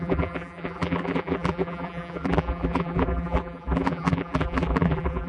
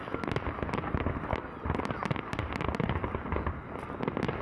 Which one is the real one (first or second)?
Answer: second